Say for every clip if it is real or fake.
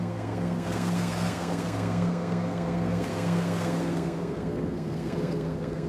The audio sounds fake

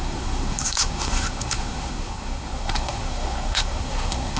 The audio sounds fake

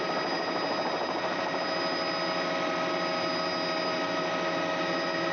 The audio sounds real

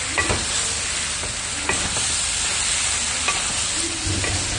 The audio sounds real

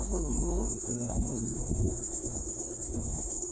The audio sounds fake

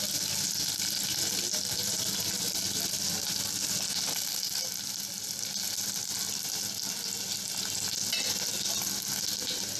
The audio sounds real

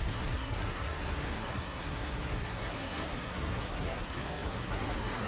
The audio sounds fake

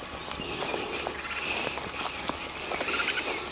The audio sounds real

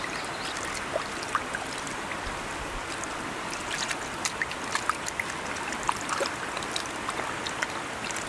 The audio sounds real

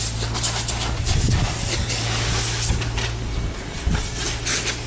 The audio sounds real